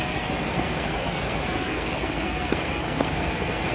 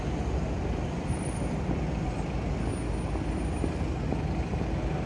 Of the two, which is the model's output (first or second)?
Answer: first